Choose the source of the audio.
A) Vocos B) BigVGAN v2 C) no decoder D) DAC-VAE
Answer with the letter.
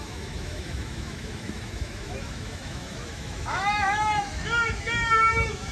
D